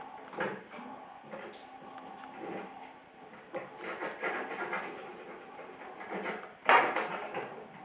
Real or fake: real